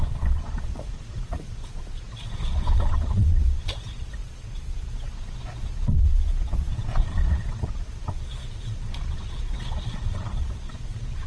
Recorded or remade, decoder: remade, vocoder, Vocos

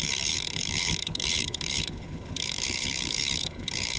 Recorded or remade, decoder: remade, codec, HILCodec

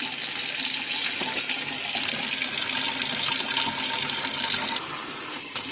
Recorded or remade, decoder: recorded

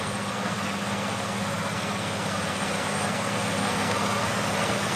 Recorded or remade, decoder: remade, codec, SNAC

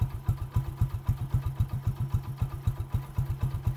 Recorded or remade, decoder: recorded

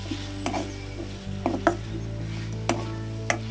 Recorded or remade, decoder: recorded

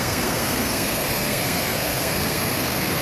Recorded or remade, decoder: remade, codec, SNAC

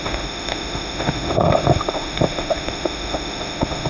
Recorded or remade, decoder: remade, autoencoder, DAC-VAE